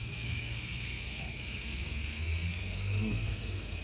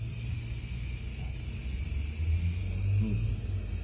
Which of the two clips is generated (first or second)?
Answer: first